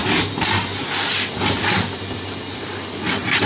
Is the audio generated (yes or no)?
no